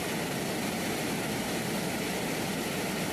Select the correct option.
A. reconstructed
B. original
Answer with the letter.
B